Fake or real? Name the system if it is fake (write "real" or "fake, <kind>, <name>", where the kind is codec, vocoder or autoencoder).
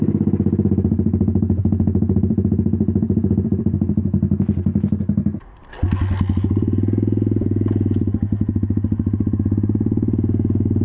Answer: real